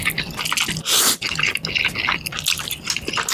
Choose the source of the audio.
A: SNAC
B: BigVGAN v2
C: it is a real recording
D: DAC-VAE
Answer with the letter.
C